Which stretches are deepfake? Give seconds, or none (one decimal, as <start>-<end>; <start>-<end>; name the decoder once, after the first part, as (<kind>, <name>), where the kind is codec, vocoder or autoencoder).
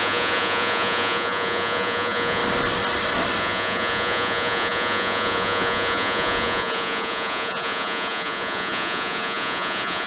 0.0-2.4 (vocoder, Vocos); 3.4-10.1